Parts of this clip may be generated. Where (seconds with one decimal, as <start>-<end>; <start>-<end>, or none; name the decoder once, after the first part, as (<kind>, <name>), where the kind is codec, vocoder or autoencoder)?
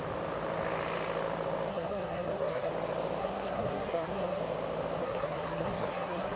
1.7-2.7 (codec, SNAC); 3.2-4.4; 5.0-6.4